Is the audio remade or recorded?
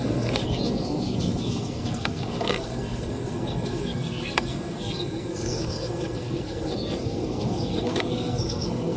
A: remade